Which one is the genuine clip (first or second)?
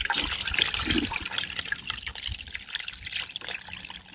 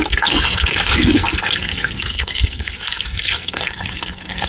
first